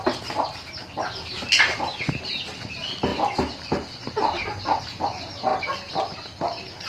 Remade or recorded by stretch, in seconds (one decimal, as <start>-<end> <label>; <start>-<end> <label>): 0.0-3.1 recorded; 3.1-4.8 remade; 4.8-6.9 recorded